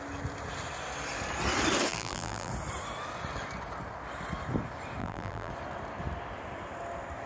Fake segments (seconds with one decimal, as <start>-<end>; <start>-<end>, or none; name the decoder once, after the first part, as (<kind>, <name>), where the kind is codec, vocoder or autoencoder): 1.9-2.5 (vocoder, BigVGAN v2); 5.0-5.5